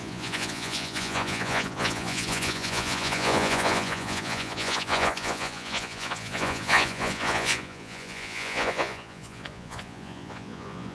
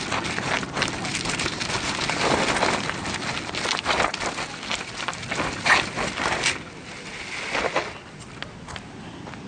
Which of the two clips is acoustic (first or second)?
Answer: second